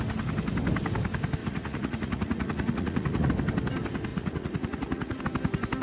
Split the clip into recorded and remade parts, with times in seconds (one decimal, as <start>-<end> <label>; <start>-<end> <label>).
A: 0.0-1.4 recorded; 1.4-3.3 remade; 3.3-4.1 recorded; 4.1-5.2 remade; 5.2-5.8 recorded